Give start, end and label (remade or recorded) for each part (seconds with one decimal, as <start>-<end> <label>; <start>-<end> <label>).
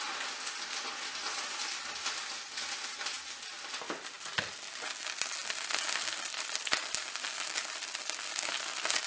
0.0-9.1 recorded